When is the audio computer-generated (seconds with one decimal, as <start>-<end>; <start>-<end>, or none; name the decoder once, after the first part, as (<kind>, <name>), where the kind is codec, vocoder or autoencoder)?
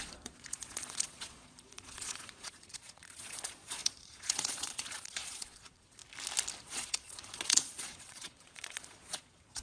0.0-6.0 (vocoder, Vocos); 6.6-9.6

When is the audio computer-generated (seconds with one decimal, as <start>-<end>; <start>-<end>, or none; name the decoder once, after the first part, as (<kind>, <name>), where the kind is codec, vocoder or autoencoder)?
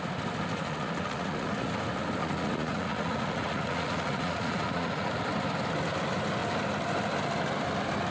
0.5-1.7 (vocoder, Vocos); 2.2-5.1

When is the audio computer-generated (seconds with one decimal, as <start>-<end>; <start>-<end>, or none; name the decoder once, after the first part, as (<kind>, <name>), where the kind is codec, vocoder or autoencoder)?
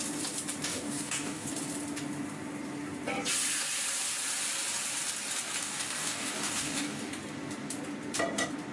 0.7-1.5 (codec, DAC); 5.6-7.1